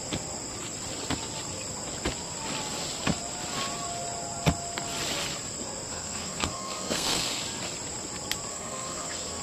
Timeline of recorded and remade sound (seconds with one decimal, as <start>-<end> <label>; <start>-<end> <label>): 0.0-5.9 recorded; 5.9-7.4 remade; 7.4-8.5 recorded; 8.5-9.4 remade